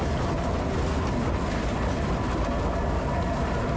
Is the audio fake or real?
real